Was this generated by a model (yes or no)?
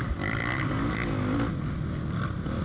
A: no